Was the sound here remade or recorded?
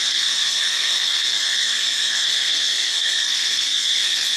remade